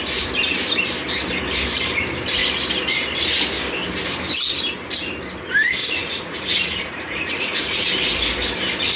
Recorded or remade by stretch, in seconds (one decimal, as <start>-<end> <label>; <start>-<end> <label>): 0.0-5.8 recorded; 5.8-7.8 remade; 7.8-9.0 recorded